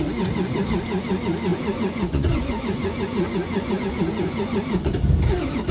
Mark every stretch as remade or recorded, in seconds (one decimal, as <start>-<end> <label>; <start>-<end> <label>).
0.0-1.5 recorded; 1.5-4.9 remade; 4.9-5.7 recorded